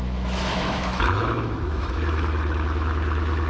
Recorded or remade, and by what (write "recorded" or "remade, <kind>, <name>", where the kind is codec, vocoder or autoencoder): remade, autoencoder, DAC-VAE